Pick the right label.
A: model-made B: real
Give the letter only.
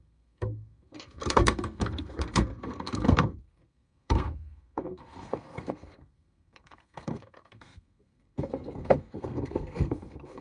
A